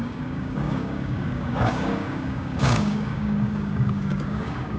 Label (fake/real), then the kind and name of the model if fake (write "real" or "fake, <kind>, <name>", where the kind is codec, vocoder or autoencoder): fake, codec, DAC